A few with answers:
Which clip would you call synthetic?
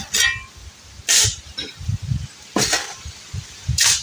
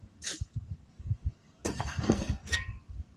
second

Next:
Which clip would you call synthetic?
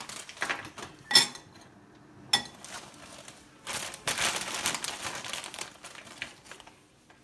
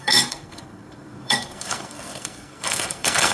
second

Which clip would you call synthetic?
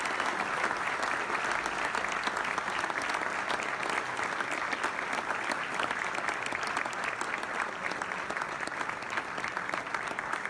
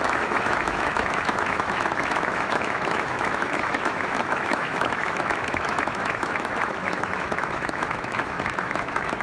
second